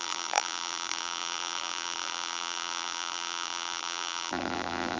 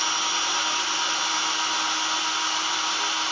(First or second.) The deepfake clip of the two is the first